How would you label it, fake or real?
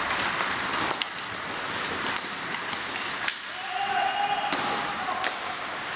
real